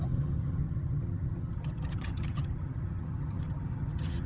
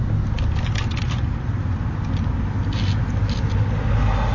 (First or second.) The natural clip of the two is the second